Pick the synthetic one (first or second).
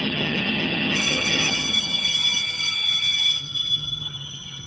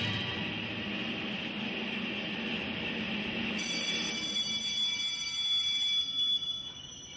first